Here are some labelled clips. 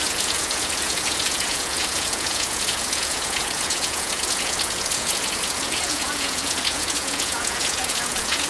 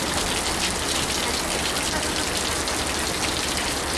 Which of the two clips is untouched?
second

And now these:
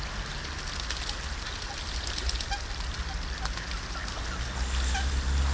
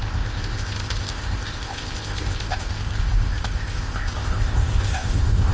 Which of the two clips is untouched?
first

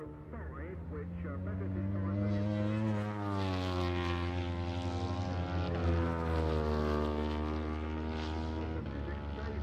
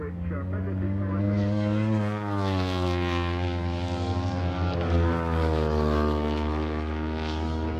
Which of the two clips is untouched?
first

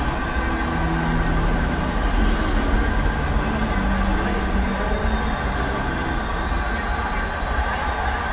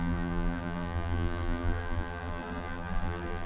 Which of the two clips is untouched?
first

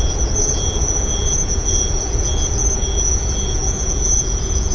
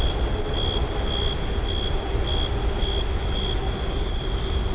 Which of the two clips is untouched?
second